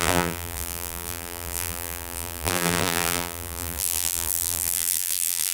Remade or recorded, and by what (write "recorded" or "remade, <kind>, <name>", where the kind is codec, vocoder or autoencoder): remade, vocoder, BigVGAN v2